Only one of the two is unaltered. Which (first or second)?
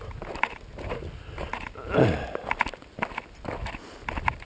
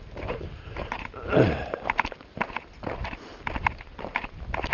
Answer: first